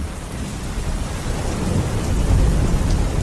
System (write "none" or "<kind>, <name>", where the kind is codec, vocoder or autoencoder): none